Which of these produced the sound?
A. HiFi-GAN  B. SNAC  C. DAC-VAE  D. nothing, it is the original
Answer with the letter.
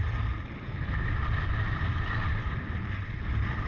D